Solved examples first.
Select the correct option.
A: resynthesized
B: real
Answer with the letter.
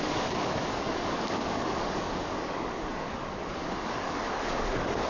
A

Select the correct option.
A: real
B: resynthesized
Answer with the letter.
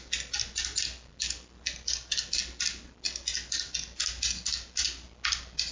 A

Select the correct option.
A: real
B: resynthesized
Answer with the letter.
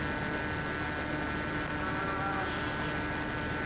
A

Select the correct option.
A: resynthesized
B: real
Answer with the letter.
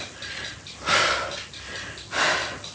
B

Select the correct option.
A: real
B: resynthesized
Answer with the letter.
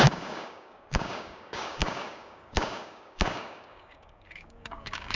B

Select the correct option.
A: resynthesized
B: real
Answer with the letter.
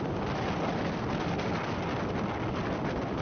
B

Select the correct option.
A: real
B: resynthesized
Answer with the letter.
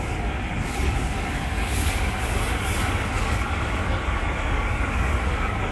B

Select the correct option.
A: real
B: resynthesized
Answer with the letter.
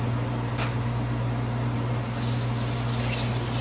A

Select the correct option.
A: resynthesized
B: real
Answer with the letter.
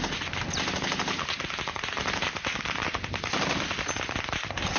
B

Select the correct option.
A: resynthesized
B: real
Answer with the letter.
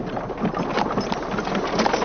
B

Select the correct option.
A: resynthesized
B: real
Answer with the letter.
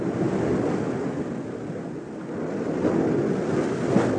B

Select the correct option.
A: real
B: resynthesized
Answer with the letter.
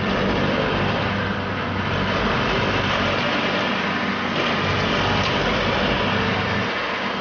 A